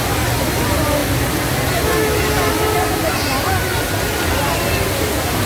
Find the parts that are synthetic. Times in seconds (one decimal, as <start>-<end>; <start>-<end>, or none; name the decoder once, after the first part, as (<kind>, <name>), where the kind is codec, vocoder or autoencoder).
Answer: none